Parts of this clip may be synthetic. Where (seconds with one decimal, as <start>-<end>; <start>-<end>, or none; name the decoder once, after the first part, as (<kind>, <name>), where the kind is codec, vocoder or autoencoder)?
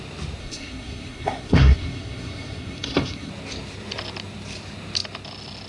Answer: 0.4-3.3 (codec, SNAC)